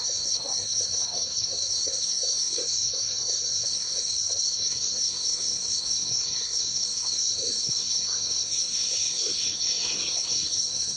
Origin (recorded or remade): remade